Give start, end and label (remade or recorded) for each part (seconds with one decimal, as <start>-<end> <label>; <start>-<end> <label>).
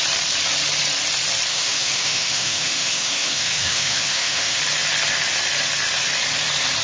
0.0-1.5 recorded; 1.5-4.6 remade; 4.6-6.8 recorded